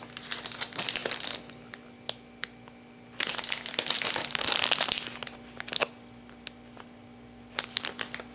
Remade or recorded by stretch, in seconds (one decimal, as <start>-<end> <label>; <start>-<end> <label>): 0.0-8.3 recorded